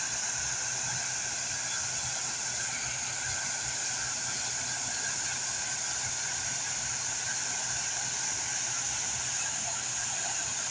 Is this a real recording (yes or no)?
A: yes